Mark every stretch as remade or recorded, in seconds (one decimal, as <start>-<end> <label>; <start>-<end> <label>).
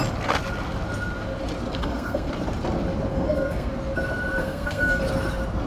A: 0.0-1.7 recorded; 1.7-2.3 remade; 2.3-3.1 recorded; 3.1-3.7 remade; 3.7-4.4 recorded; 4.4-5.0 remade; 5.0-5.7 recorded